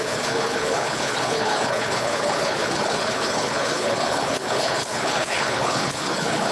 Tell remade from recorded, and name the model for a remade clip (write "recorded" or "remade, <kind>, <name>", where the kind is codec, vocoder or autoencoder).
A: remade, codec, HILCodec